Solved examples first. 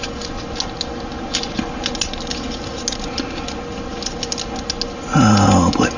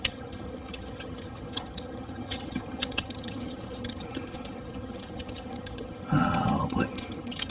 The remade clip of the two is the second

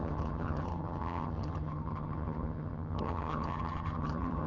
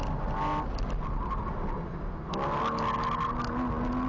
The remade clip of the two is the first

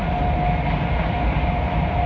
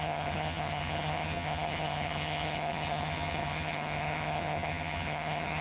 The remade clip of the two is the second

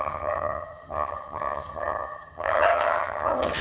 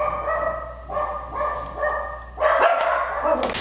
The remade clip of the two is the first